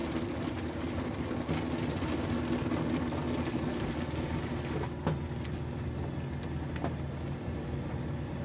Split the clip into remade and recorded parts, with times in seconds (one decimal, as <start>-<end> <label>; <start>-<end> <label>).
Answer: 0.0-8.4 recorded